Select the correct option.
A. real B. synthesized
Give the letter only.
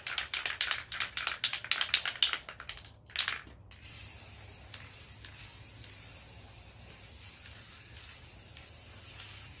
A